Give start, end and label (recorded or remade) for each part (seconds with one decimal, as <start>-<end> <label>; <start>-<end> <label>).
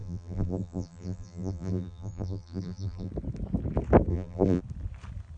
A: 0.0-3.1 remade; 3.1-4.1 recorded; 4.1-4.6 remade; 4.6-5.4 recorded